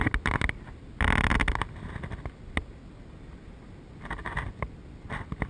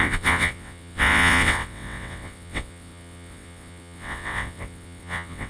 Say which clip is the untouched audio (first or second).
first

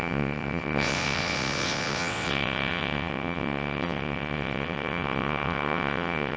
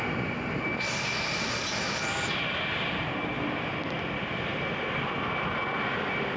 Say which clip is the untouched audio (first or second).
second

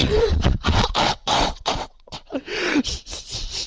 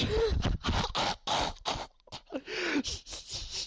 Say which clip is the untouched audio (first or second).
second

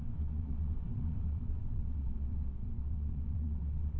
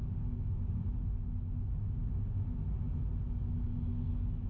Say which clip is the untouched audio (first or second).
second